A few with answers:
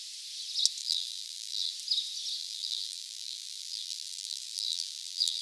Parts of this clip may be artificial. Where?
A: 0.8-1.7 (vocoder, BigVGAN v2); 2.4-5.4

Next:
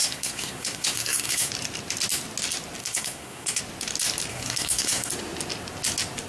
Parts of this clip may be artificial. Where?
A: 0.0-1.5 (codec, SNAC); 2.8-3.6; 4.3-5.1

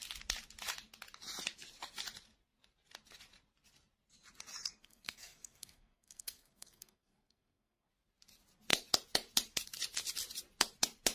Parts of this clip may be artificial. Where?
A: 4.7-7.9 (codec, SNAC)

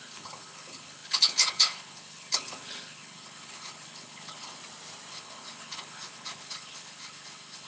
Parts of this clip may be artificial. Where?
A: 0.0-4.6 (codec, HILCodec); 5.1-7.7